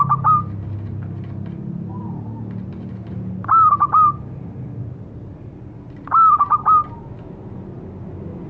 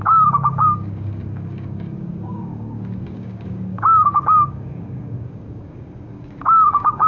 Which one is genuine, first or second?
first